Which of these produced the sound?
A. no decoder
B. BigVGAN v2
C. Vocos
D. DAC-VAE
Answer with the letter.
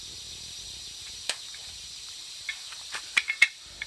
B